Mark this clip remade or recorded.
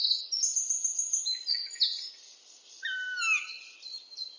recorded